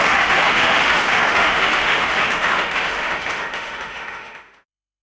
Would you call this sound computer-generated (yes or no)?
yes